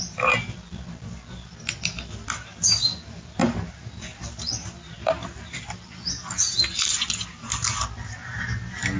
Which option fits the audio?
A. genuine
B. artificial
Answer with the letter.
A